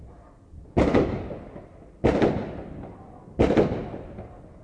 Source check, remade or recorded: recorded